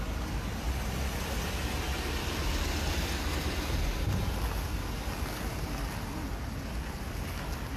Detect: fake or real real